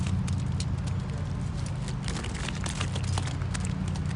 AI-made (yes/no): no